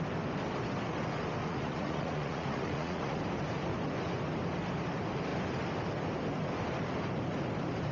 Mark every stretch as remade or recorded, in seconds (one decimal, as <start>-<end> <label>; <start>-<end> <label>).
0.0-1.4 recorded; 1.4-3.2 remade; 3.2-7.9 recorded